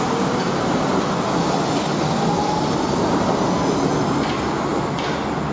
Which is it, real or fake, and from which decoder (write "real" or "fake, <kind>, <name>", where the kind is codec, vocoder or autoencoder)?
real